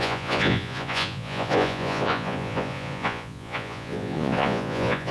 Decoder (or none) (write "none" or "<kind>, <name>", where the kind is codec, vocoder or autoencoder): vocoder, Vocos